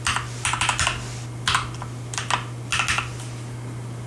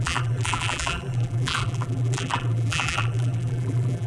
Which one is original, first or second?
first